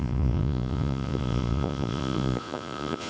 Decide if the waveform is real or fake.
fake